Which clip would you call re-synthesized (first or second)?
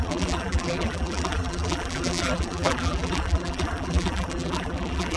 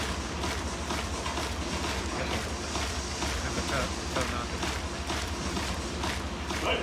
first